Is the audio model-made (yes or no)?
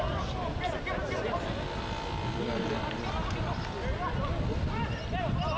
no